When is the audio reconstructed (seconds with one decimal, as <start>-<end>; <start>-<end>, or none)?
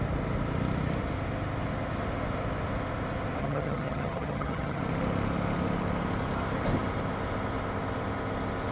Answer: 3.4-4.8